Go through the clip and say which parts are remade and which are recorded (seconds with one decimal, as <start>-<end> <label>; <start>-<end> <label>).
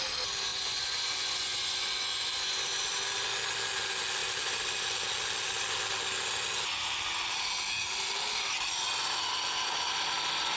0.0-0.5 recorded; 0.5-2.9 remade; 2.9-10.6 recorded